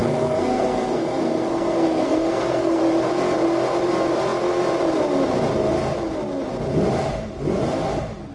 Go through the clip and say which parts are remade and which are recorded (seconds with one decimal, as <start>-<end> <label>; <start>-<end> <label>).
0.0-2.8 remade; 2.8-8.3 recorded